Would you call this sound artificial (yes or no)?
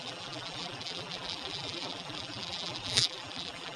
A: yes